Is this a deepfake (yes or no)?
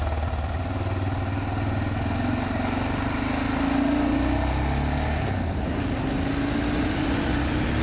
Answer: no